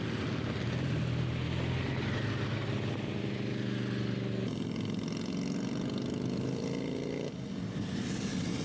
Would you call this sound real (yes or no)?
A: yes